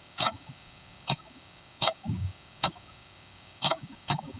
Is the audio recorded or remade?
remade